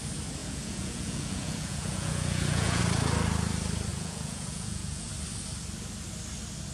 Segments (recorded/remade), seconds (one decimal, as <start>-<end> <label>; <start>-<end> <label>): 0.0-0.4 recorded; 0.4-2.8 remade; 2.8-3.9 recorded; 3.9-5.1 remade; 5.1-6.7 recorded